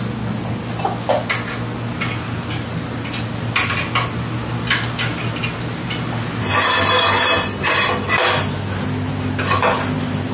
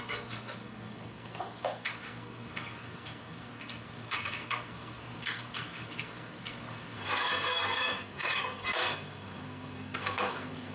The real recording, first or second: first